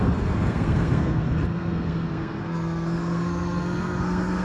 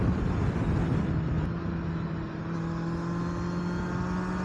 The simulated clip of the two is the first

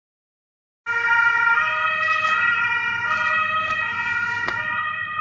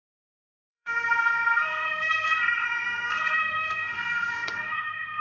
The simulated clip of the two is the second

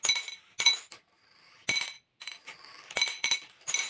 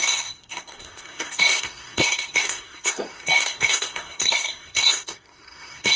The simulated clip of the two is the second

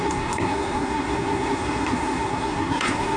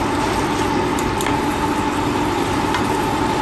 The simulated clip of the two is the first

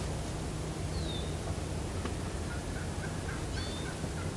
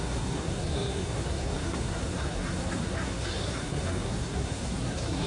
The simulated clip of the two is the second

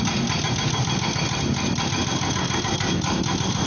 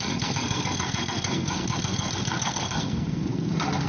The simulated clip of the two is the second